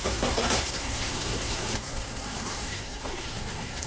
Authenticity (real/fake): fake